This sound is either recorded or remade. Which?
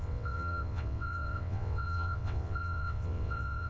remade